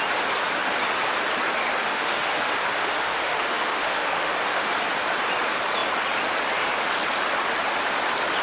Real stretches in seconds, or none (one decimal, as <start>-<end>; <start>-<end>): 0.0-1.8; 4.7-8.4